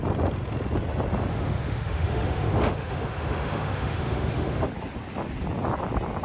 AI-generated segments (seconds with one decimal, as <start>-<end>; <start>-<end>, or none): 1.3-4.7